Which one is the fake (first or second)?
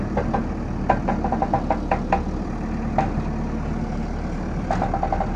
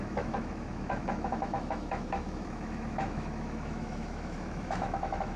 second